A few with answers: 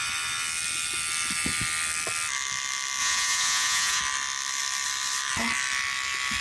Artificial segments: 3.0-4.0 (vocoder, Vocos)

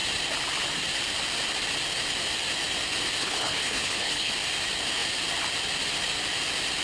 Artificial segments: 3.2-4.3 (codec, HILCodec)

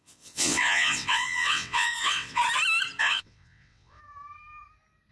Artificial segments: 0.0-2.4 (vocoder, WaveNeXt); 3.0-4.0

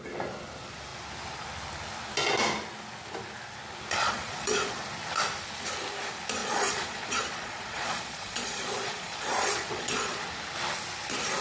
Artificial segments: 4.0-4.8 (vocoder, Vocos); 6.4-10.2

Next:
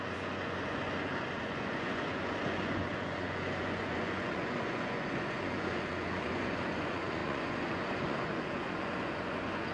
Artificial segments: 0.0-9.7 (vocoder, Vocos)

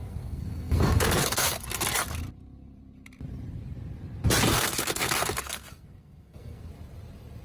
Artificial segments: 0.0-1.6 (codec, SNAC); 4.5-6.7